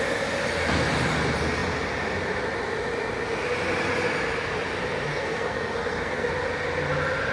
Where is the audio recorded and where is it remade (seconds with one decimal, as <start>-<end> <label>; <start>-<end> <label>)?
0.0-5.1 recorded; 5.1-6.3 remade; 6.3-7.3 recorded